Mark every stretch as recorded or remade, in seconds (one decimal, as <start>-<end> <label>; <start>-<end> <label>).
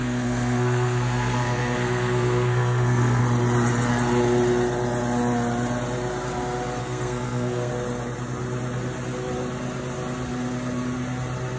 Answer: 0.0-3.2 remade; 3.2-6.8 recorded; 6.8-7.7 remade; 7.7-11.6 recorded